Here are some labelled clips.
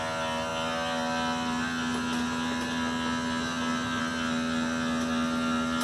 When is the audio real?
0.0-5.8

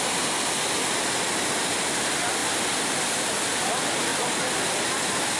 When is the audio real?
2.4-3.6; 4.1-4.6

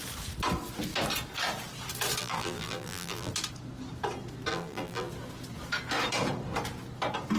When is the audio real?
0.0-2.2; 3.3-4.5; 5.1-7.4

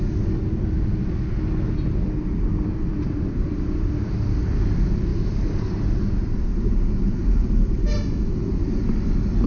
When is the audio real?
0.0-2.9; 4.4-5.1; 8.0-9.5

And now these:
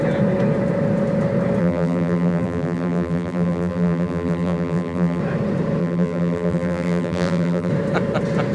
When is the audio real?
0.0-1.6; 5.2-5.8; 7.7-8.5